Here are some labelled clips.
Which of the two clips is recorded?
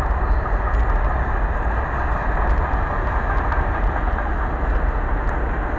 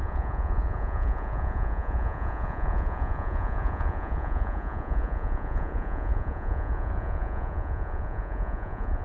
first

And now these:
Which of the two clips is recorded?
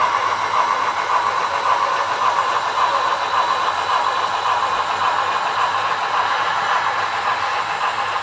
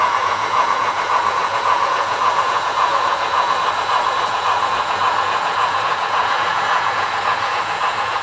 first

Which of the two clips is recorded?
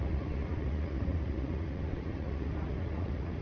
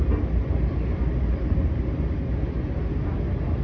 second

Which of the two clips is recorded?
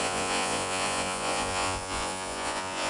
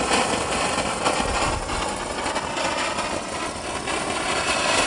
second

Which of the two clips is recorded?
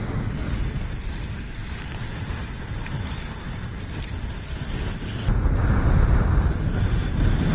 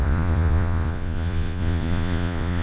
first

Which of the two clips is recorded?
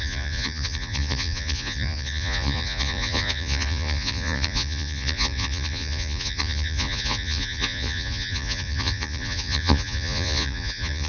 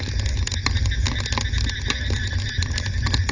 second